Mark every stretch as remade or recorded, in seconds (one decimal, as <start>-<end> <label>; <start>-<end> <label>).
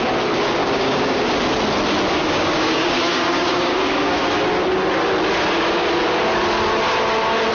0.0-0.6 recorded; 0.6-1.2 remade; 1.2-2.2 recorded; 2.2-4.3 remade; 4.3-7.5 recorded